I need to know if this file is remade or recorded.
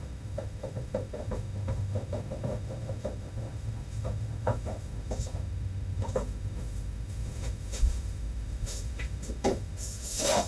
remade